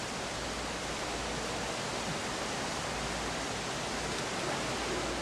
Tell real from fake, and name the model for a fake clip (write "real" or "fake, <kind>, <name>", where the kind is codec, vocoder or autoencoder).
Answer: real